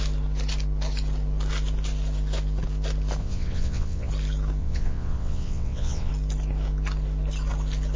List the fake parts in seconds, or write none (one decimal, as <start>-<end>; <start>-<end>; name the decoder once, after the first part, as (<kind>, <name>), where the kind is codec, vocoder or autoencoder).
3.2-4.1 (vocoder, WaveNeXt); 4.6-6.1